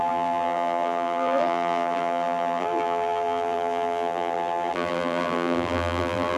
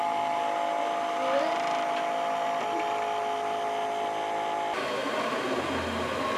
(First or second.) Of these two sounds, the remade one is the first